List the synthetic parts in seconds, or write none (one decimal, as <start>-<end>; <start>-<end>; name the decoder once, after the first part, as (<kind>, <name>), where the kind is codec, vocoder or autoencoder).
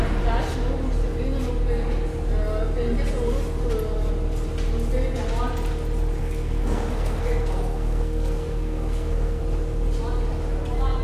6.2-9.4 (codec, SNAC)